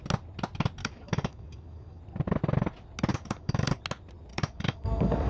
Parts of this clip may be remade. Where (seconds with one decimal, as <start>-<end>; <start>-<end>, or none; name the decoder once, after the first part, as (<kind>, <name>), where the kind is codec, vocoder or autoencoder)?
0.8-2.0 (codec, DAC); 3.1-3.8; 4.3-5.3